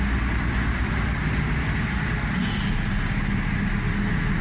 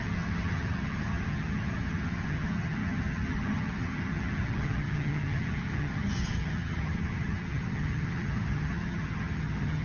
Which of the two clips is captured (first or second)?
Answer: first